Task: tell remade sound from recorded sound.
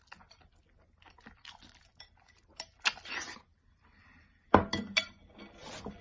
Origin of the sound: recorded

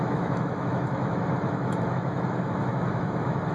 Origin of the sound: remade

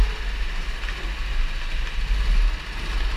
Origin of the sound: recorded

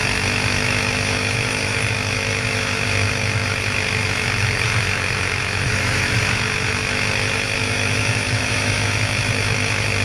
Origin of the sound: remade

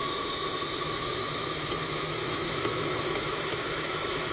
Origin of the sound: remade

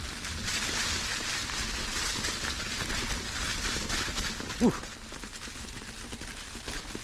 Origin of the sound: recorded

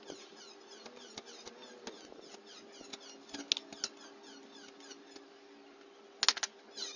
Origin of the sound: recorded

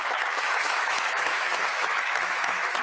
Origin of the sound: remade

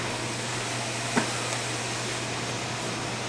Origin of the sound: recorded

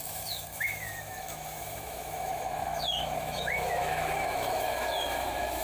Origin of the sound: remade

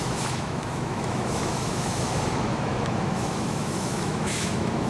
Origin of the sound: remade